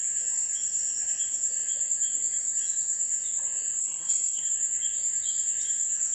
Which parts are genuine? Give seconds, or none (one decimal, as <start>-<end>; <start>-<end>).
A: 0.0-3.8; 4.5-6.1